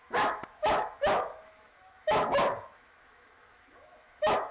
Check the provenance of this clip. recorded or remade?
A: remade